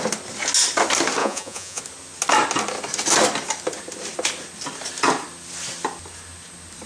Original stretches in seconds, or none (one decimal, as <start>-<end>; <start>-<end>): 0.0-1.2; 1.8-6.9